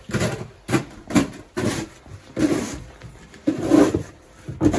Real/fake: real